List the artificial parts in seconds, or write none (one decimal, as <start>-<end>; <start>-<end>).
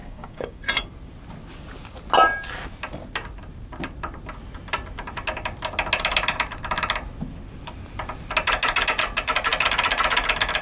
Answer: 0.0-0.6